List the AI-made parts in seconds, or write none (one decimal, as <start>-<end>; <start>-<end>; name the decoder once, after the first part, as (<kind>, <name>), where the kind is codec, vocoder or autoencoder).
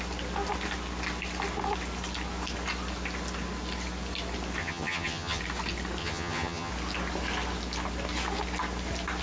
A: 4.6-5.4 (vocoder, HiFi-GAN); 6.0-6.7